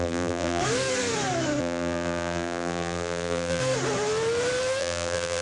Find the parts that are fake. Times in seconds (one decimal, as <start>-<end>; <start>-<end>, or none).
0.0-0.6; 1.6-3.6; 4.8-5.4